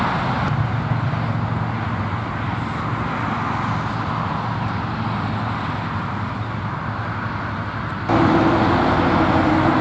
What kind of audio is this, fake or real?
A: real